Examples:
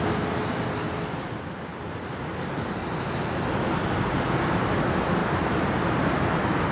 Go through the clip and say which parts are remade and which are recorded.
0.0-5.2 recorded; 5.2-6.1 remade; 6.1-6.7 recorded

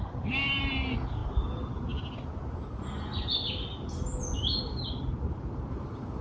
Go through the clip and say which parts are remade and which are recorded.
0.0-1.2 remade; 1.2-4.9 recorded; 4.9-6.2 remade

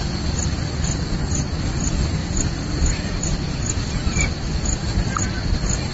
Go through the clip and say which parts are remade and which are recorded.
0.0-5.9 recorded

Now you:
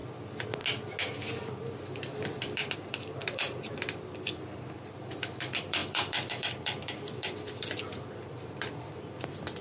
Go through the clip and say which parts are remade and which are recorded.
0.0-1.2 recorded; 1.2-9.6 remade

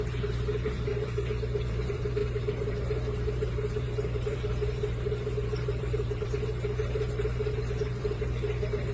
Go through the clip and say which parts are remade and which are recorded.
0.0-8.9 remade

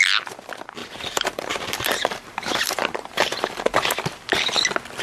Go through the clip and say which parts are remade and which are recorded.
0.0-0.8 recorded; 0.8-3.6 remade; 3.6-5.0 recorded